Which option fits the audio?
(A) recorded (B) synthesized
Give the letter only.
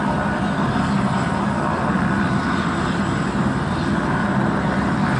A